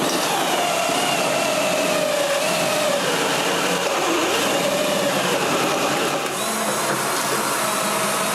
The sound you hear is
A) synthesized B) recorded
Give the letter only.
B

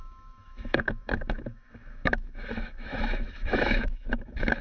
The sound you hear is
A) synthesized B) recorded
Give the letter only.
A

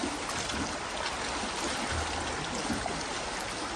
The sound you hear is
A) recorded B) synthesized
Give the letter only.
A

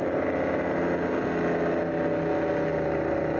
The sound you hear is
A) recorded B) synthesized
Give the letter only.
A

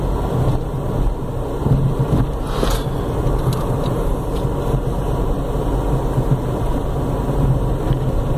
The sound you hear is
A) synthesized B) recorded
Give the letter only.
B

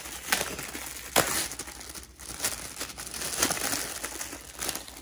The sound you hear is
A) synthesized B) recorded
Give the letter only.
B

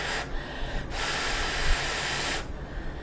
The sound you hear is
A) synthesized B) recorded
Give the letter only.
B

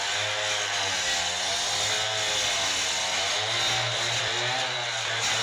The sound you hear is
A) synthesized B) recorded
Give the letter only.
B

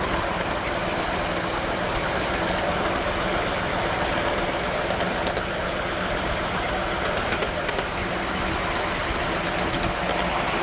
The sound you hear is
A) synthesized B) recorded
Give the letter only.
B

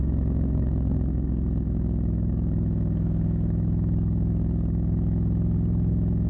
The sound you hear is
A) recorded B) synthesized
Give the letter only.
B